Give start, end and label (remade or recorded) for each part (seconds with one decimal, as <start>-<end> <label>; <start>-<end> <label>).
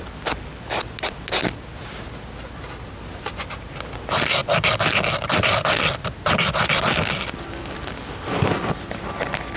0.0-9.6 recorded